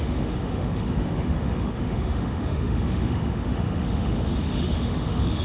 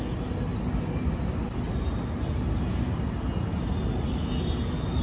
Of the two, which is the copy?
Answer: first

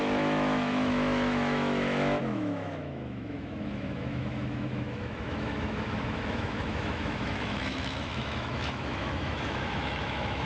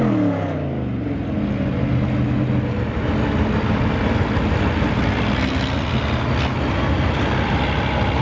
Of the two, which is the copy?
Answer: first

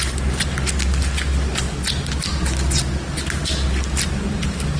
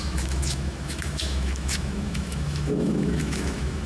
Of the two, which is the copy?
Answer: second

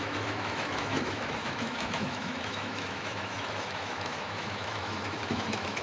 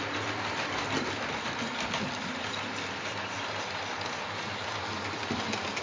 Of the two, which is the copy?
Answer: first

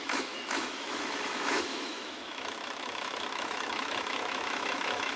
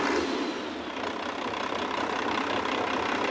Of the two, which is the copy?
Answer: first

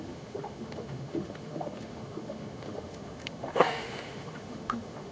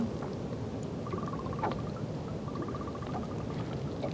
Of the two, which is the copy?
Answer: first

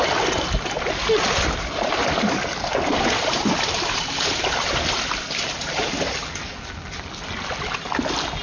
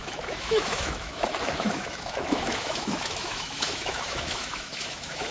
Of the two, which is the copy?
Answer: second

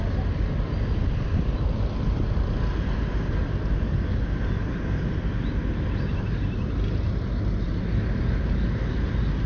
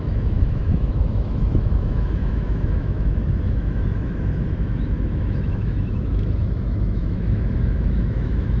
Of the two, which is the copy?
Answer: second